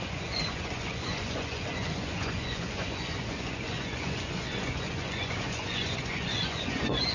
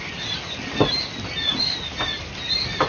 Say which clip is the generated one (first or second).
first